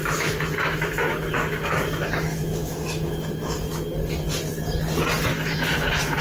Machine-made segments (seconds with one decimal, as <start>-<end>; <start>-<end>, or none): 0.0-3.7; 5.3-6.2